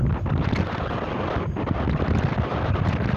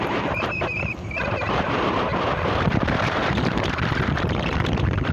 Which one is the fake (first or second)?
second